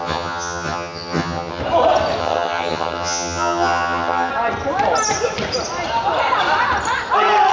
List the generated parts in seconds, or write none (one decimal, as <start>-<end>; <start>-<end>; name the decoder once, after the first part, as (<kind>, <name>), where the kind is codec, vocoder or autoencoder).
0.0-1.6 (vocoder, HiFi-GAN); 2.2-4.3